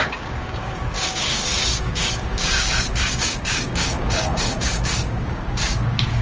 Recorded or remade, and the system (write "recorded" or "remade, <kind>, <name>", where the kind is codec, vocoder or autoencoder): remade, codec, DAC